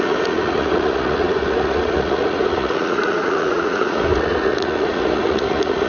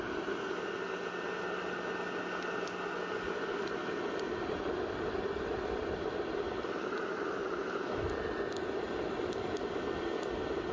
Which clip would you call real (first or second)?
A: second